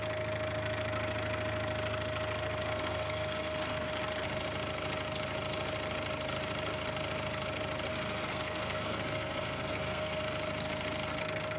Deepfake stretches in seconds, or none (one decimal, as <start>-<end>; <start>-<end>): 2.7-3.9; 7.9-10.2